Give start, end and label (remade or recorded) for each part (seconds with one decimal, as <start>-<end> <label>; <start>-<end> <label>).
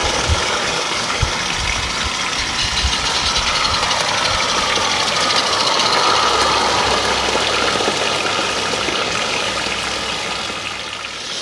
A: 0.0-1.3 remade; 1.3-5.4 recorded; 5.4-6.0 remade; 6.0-8.9 recorded; 8.9-9.5 remade; 9.5-11.4 recorded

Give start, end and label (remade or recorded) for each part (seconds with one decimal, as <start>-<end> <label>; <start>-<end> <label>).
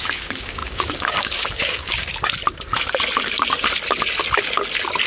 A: 0.0-2.1 remade; 2.1-5.1 recorded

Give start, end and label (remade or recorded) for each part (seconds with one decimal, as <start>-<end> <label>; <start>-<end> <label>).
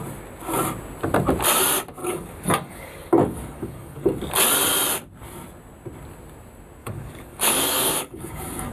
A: 0.0-2.0 recorded; 2.0-4.2 remade; 4.2-6.8 recorded; 6.8-8.7 remade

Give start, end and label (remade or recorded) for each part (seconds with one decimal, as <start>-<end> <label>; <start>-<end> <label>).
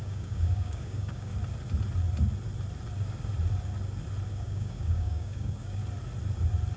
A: 0.0-1.3 remade; 1.3-4.3 recorded; 4.3-5.8 remade; 5.8-6.8 recorded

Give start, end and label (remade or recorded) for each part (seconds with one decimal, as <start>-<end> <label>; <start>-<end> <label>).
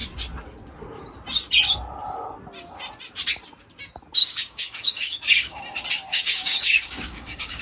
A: 0.0-4.2 recorded; 4.2-5.6 remade; 5.6-6.1 recorded; 6.1-7.6 remade